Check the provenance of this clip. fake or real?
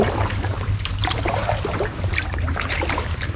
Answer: fake